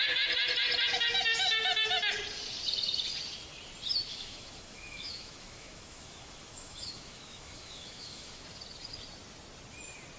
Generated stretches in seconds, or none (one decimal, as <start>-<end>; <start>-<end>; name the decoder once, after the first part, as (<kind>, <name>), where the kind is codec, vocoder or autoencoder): 4.1-8.4 (autoencoder, DAC-VAE)